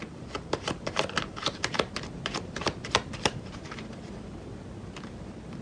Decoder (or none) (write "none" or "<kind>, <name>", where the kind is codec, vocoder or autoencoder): vocoder, BigVGAN v2